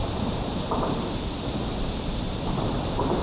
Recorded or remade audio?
remade